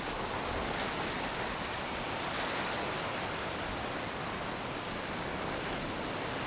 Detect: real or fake real